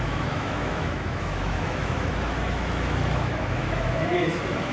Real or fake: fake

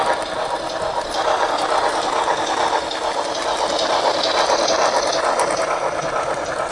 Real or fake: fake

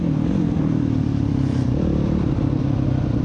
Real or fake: fake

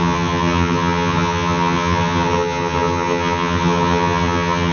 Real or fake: fake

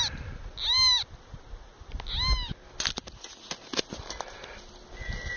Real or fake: real